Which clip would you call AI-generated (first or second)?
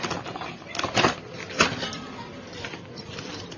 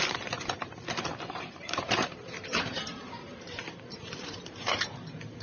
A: second